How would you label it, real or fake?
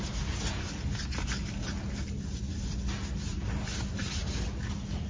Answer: real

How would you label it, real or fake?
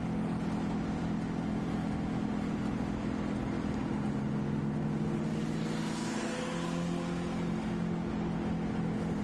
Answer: real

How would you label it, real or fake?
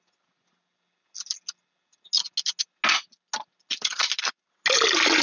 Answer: real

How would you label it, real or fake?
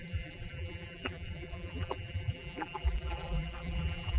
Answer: fake